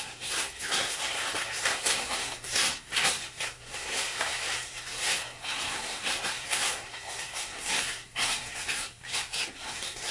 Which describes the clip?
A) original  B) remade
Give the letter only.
B